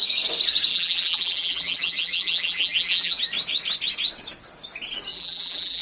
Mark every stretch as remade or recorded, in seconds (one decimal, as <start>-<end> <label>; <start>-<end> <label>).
0.0-0.7 recorded; 0.7-3.2 remade; 3.2-5.1 recorded; 5.1-5.8 remade